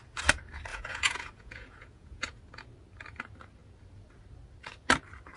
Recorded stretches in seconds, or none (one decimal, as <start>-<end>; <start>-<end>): 0.0-0.7; 2.4-5.4

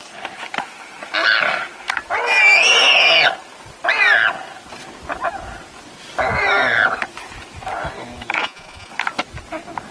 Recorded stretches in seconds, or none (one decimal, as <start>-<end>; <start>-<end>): 0.0-8.4; 8.9-9.9

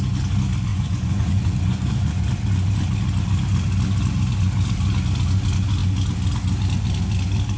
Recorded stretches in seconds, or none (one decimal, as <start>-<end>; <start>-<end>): 0.0-0.7; 2.3-7.6